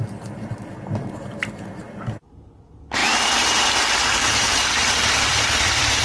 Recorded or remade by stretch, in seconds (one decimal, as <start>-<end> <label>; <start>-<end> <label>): 0.0-3.0 recorded; 3.0-6.0 remade